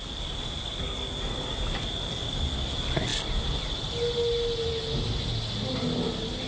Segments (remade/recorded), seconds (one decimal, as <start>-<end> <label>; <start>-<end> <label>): 0.0-6.5 recorded